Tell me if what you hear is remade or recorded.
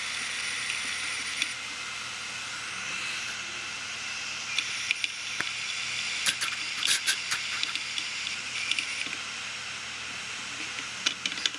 recorded